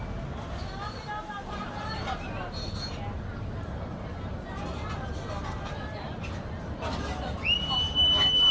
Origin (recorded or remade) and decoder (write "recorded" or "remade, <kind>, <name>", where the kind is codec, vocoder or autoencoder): recorded